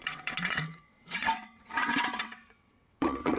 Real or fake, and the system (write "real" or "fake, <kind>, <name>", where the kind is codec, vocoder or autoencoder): fake, vocoder, WaveNeXt